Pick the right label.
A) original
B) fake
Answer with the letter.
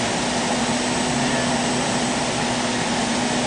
A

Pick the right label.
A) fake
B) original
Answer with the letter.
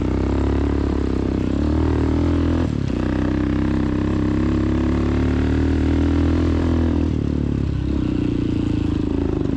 B